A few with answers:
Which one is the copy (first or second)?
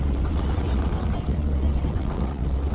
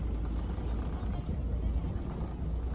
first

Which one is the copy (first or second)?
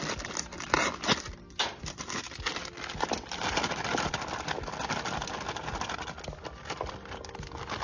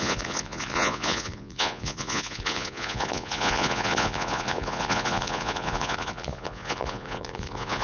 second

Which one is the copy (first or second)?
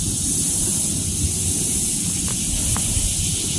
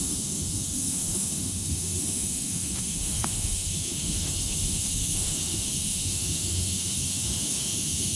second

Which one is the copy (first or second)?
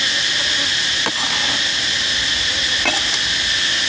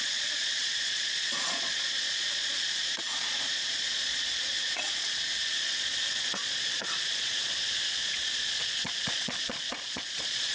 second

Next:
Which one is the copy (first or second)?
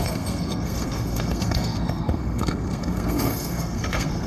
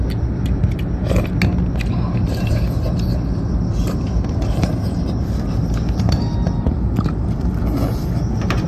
first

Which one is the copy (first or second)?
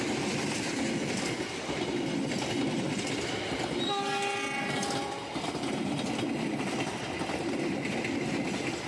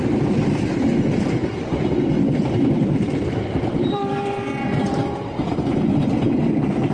second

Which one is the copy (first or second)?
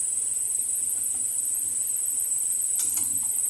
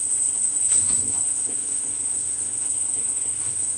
second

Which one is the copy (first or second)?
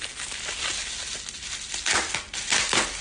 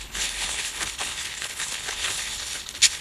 second